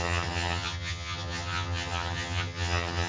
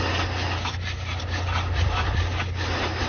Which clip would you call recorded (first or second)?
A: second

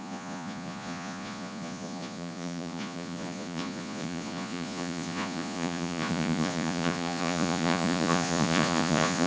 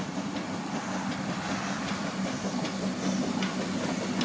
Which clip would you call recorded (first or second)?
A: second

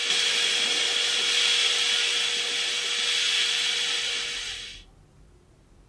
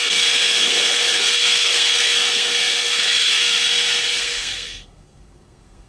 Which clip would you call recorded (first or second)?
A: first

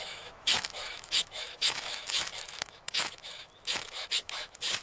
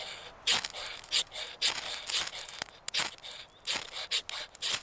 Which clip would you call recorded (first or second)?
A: second